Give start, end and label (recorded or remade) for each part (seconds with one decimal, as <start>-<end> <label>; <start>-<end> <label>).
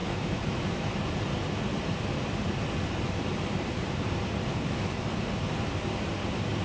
0.0-1.1 remade; 1.1-4.5 recorded; 4.5-5.1 remade; 5.1-6.6 recorded